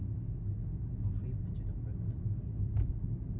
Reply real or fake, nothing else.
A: real